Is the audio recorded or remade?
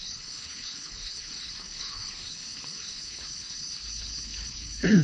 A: remade